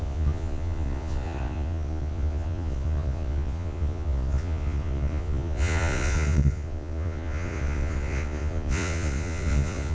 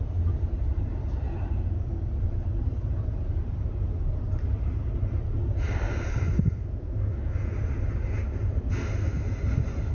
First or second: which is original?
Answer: second